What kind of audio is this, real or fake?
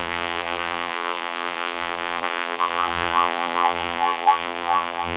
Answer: fake